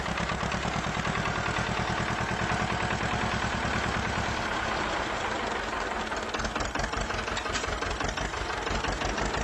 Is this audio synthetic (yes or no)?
no